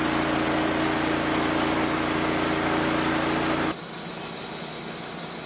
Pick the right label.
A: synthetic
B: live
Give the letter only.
B